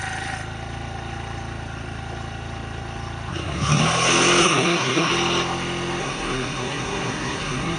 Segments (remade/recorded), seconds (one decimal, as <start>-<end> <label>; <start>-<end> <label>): 0.0-3.3 recorded; 3.3-3.8 remade; 3.8-4.4 recorded; 4.4-5.1 remade; 5.1-6.0 recorded; 6.0-7.8 remade

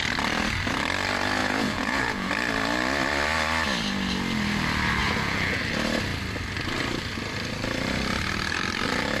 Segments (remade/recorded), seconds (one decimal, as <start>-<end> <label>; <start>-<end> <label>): 0.0-1.4 recorded; 1.4-2.3 remade; 2.3-5.0 recorded; 5.0-5.6 remade; 5.6-9.2 recorded